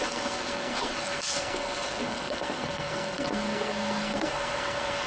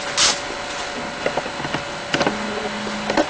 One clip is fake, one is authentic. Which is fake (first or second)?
first